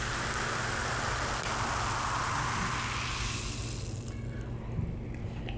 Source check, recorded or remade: recorded